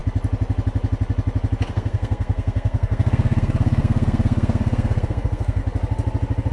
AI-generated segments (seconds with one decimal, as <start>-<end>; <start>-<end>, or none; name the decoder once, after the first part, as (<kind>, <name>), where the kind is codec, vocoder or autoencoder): 1.7-5.6 (codec, SNAC)